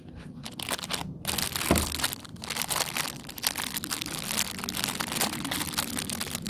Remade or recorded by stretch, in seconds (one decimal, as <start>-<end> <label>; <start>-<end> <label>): 0.0-1.0 remade; 1.0-1.7 recorded; 1.7-6.5 remade